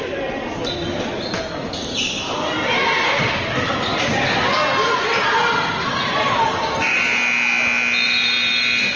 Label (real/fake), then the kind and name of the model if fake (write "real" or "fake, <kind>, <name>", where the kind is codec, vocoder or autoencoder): real